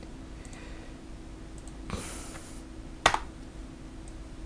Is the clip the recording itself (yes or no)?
yes